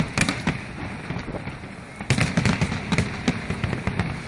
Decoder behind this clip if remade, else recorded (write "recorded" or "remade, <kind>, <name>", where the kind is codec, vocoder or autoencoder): recorded